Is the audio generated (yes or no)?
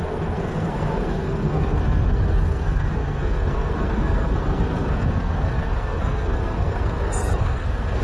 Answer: yes